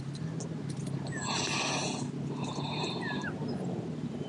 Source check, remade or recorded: recorded